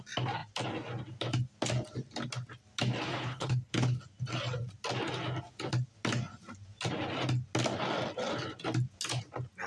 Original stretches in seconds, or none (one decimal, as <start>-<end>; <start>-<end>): 0.0-3.1; 4.0-9.7